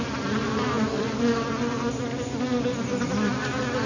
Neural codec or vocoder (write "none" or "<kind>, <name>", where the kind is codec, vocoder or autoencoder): none